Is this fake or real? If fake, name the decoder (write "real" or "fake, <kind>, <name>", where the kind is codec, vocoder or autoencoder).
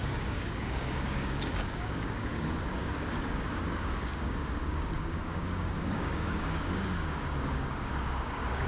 fake, codec, DAC